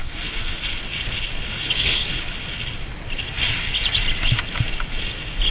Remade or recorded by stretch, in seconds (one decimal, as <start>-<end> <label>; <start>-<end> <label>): 0.0-0.6 remade; 0.6-1.5 recorded; 1.5-2.0 remade; 2.0-5.5 recorded